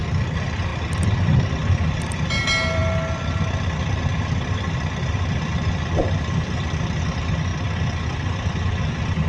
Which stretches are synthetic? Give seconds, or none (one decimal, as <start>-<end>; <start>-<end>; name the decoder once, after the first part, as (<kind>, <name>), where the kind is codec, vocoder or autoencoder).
none

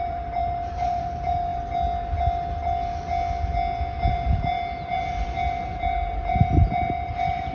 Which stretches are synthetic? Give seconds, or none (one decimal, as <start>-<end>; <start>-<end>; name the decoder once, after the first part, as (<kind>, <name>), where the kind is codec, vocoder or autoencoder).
0.0-1.5 (vocoder, BigVGAN v2); 4.1-7.5

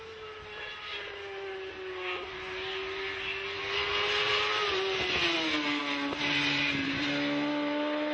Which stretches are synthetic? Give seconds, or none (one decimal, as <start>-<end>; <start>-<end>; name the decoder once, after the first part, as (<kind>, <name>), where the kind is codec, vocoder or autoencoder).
none

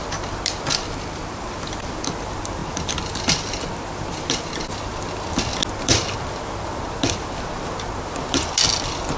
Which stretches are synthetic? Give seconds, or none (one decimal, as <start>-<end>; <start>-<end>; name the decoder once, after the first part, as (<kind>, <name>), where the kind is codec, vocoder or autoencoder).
none

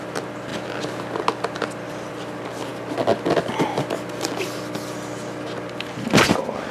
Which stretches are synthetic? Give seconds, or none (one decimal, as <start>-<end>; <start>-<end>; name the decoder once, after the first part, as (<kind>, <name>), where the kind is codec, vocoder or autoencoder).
none